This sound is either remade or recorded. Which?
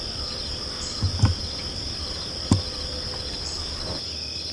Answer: recorded